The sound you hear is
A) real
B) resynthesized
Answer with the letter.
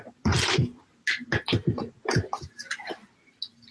A